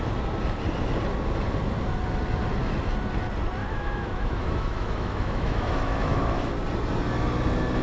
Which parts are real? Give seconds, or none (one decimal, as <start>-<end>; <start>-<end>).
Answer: 0.0-3.6; 6.5-7.8